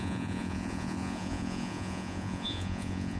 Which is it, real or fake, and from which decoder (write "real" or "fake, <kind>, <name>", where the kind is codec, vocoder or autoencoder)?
fake, vocoder, Vocos